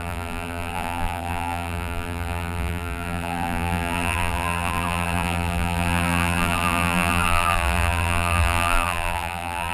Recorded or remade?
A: remade